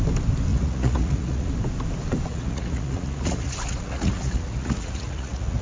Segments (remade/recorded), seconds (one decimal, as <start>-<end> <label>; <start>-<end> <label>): 0.0-0.5 recorded; 0.5-1.5 remade; 1.5-2.3 recorded; 2.3-5.6 remade